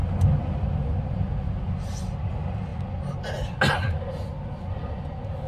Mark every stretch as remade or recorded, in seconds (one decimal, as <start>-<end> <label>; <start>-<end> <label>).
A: 0.0-5.5 recorded